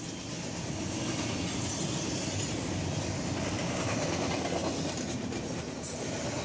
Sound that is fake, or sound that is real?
real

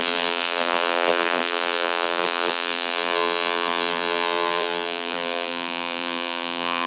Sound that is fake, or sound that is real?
fake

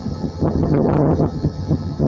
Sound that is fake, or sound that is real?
fake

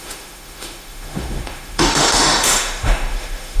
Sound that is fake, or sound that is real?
fake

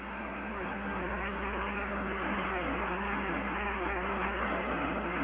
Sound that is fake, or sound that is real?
fake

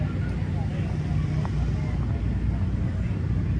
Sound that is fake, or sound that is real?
real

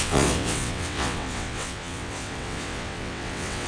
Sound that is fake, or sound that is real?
fake